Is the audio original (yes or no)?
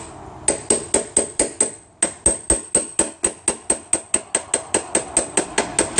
yes